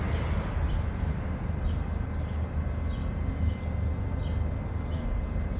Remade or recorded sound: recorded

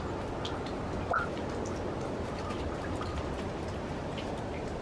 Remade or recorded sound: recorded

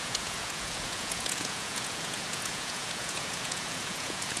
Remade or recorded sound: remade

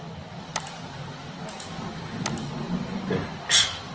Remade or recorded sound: recorded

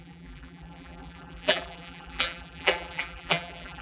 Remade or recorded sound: remade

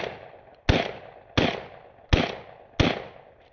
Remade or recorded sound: recorded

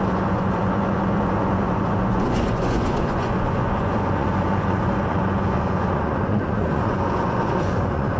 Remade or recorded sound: remade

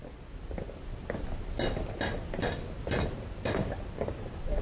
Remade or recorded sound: recorded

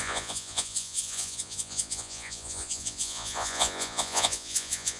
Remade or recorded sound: remade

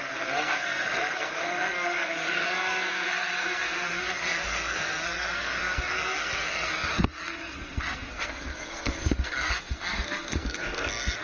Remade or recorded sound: remade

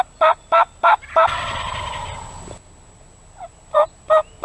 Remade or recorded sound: remade